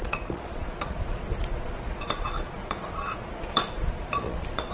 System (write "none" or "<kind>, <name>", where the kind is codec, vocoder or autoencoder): vocoder, Vocos